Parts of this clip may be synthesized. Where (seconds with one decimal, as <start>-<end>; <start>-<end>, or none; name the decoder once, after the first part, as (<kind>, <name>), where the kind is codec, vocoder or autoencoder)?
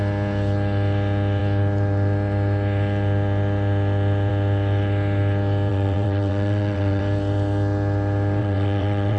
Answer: 5.7-7.0 (vocoder, WaveNeXt); 8.4-9.2